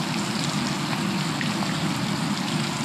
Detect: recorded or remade recorded